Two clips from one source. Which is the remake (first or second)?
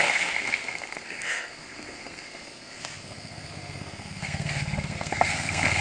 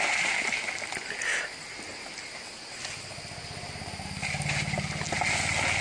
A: first